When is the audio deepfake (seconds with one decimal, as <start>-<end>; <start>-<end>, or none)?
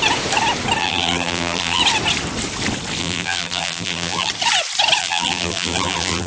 0.8-1.8; 3.0-4.3; 5.0-6.3